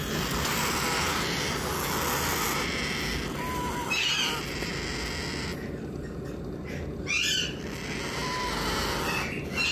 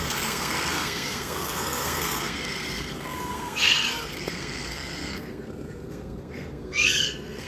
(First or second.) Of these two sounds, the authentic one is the first